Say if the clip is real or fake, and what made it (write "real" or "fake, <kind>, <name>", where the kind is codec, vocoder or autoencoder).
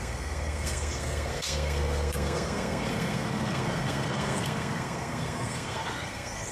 fake, codec, SNAC